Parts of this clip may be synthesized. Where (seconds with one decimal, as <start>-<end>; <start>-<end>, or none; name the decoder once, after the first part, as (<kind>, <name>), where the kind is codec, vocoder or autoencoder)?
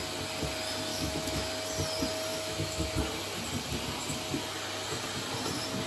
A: 0.9-1.5 (autoencoder, DAC-VAE); 2.3-2.9